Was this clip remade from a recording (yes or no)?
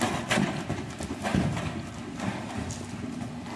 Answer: no